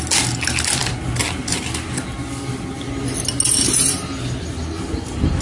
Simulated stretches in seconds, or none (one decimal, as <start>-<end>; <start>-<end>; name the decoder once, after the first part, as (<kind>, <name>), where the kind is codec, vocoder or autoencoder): none